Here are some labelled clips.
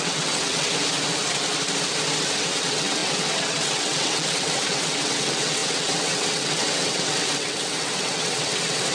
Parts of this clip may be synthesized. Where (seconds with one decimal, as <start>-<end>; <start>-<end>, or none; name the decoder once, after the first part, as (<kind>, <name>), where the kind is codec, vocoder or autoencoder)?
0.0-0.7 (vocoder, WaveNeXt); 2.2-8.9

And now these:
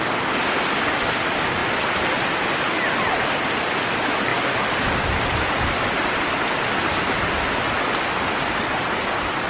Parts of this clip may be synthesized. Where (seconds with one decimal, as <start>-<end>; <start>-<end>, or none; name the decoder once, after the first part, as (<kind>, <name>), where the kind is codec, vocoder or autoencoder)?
none

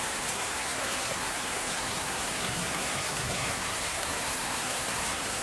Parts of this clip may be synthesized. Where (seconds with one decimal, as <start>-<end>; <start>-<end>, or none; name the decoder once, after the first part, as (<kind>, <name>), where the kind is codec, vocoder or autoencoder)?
0.0-5.4 (codec, SNAC)

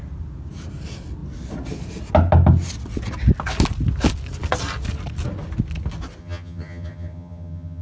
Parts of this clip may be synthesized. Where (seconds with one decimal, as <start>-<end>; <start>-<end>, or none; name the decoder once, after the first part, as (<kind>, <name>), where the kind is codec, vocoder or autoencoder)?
6.2-7.8 (vocoder, HiFi-GAN)

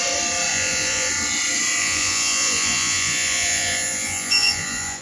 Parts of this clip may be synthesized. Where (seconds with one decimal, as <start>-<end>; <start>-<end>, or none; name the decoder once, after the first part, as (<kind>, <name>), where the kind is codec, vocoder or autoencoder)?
0.5-1.1 (vocoder, Vocos); 1.8-5.0